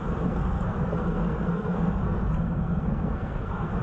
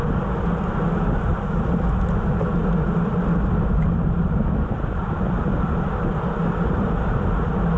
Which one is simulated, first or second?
first